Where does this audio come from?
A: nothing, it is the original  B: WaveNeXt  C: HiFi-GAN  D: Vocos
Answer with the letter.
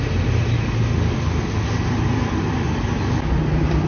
A